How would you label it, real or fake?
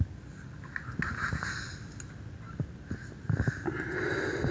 real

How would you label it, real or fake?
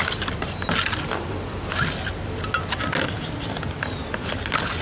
real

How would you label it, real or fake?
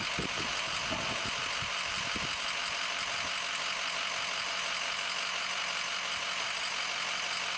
real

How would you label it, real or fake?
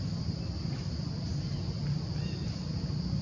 real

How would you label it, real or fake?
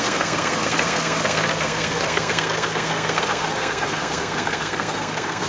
fake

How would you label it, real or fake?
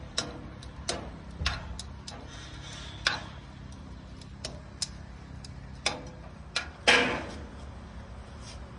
real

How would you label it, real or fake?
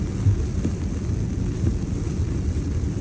real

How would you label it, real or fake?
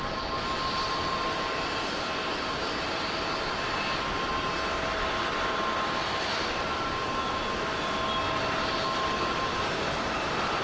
real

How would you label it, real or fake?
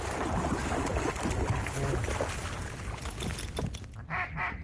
real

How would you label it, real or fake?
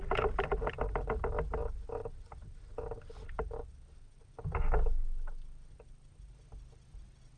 real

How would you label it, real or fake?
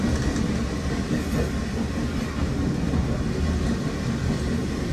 real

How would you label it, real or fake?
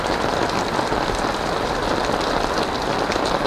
real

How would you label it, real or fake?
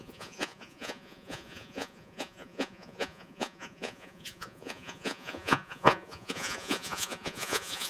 fake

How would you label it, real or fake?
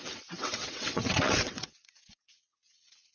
fake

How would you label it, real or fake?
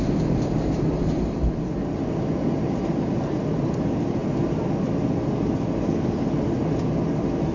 real